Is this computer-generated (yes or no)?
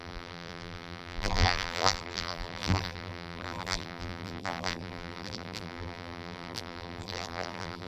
yes